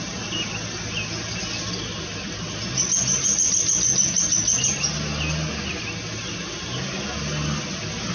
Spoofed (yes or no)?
no